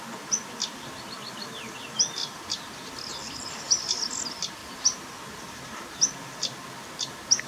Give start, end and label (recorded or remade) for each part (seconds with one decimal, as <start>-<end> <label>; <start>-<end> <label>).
0.0-7.5 recorded

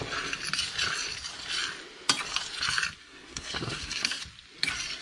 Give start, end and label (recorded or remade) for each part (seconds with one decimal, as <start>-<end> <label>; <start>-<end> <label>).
0.0-3.0 recorded; 3.0-4.2 remade; 4.2-5.0 recorded

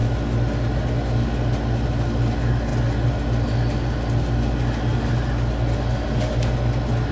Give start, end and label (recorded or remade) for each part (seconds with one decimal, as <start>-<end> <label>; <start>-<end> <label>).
0.0-7.1 recorded

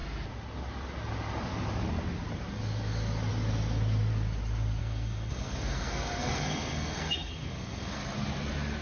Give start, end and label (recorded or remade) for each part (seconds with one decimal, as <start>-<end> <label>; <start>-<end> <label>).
0.0-4.8 recorded; 4.8-8.0 remade; 8.0-8.8 recorded

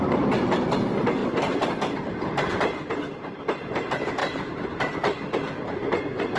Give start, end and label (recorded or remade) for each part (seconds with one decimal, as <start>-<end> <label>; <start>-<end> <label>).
0.0-6.4 recorded

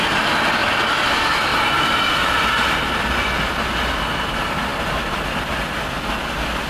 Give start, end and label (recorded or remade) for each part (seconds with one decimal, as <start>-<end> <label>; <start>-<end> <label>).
0.0-6.7 recorded

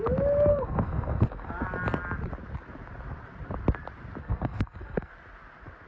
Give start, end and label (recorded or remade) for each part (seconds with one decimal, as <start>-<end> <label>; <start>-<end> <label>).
0.0-0.5 recorded; 0.5-1.5 remade; 1.5-4.2 recorded; 4.2-5.1 remade; 5.1-5.9 recorded

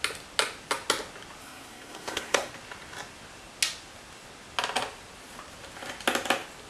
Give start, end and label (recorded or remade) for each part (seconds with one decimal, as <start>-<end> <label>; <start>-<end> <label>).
0.0-1.4 recorded; 1.4-2.5 remade; 2.5-6.7 recorded